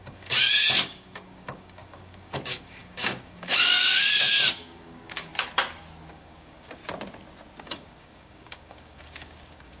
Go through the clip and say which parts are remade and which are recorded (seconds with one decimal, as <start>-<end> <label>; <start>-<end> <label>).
0.0-5.3 remade; 5.3-6.1 recorded; 6.1-6.8 remade; 6.8-7.6 recorded; 7.6-9.8 remade